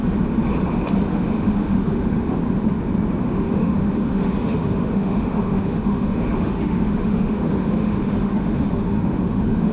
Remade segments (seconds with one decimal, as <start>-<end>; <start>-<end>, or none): 1.1-2.4; 3.2-9.7